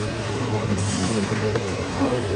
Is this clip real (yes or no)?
no